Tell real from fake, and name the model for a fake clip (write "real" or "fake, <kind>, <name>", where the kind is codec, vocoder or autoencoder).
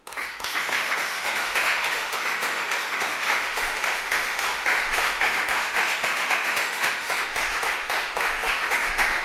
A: fake, autoencoder, DAC-VAE